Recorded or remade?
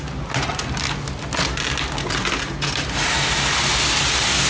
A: recorded